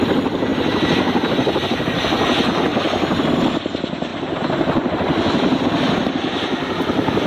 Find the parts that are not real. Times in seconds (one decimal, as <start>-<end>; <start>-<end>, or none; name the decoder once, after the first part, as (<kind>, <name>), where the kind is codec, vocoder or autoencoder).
2.7-3.2 (vocoder, BigVGAN v2); 4.1-5.6